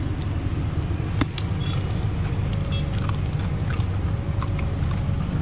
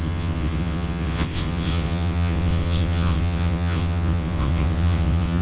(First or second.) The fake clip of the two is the second